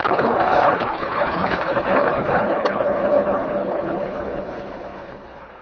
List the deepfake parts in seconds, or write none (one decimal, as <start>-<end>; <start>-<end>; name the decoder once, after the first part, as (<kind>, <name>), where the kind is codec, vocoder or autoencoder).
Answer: 0.0-5.6 (codec, HILCodec)